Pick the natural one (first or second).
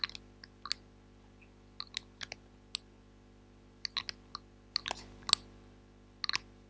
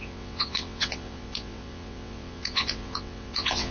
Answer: first